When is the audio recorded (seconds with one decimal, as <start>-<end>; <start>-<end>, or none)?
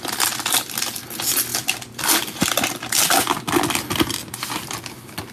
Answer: 0.0-5.3